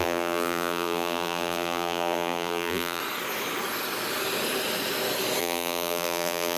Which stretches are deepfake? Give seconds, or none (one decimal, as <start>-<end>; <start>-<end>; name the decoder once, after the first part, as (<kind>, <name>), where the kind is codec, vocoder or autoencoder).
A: 0.0-3.0 (vocoder, BigVGAN v2); 5.4-6.6

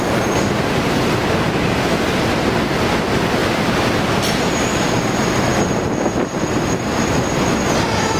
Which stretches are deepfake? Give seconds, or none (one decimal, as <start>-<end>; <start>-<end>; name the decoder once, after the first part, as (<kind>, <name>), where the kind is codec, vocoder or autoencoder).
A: none

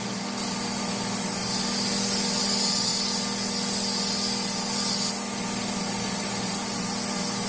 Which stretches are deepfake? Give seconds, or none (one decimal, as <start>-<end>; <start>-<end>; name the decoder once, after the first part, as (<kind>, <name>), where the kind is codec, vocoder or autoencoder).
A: none

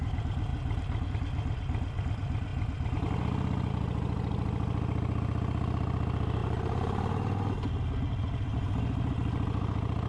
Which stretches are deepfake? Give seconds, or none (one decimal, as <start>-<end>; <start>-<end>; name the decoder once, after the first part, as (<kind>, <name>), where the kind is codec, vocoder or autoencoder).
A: 6.4-7.7 (vocoder, BigVGAN v2); 8.5-9.1

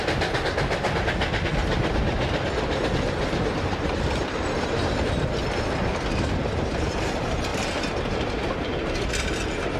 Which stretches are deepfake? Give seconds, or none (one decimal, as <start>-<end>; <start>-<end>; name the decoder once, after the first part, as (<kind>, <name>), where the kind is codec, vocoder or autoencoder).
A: none

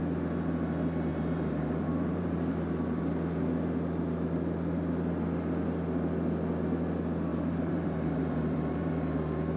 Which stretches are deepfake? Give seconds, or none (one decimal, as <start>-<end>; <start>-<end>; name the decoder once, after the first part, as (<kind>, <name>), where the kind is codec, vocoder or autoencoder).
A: 1.1-3.0 (vocoder, BigVGAN v2); 7.3-8.9

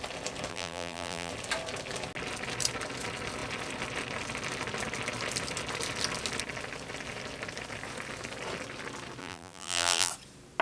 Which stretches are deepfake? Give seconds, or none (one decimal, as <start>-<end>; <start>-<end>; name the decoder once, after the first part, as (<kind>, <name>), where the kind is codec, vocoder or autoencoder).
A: 0.5-1.3 (vocoder, BigVGAN v2); 9.2-10.1

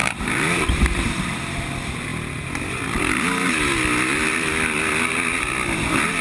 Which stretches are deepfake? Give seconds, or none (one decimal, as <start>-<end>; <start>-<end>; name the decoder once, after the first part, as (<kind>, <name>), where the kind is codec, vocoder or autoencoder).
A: 0.0-1.6 (vocoder, BigVGAN v2)